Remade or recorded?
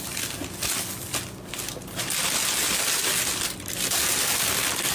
recorded